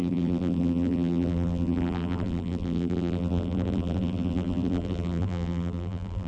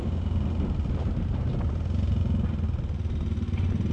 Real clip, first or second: second